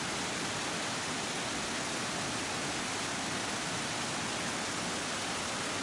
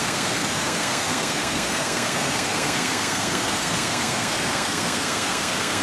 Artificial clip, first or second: second